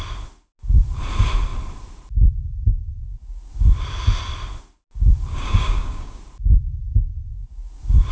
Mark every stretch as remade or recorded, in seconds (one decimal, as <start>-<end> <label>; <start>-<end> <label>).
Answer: 0.0-5.3 recorded; 5.3-6.2 remade; 6.2-8.1 recorded